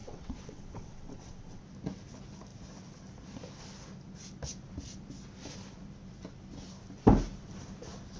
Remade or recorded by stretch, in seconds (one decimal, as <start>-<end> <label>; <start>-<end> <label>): 0.0-1.6 remade; 1.6-8.2 recorded